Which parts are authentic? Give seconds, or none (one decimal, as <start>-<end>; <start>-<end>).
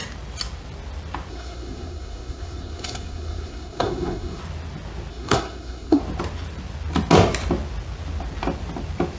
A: 0.0-1.3; 4.4-5.1; 6.0-9.2